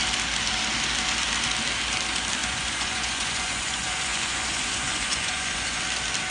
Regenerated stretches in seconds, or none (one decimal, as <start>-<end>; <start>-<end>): 2.4-5.8